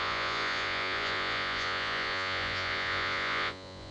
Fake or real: fake